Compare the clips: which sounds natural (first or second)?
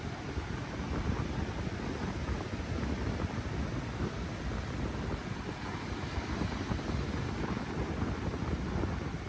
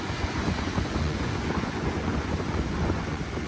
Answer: first